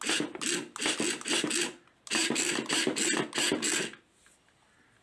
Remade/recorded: recorded